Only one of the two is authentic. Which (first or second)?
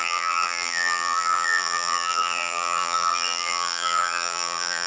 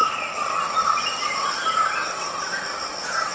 second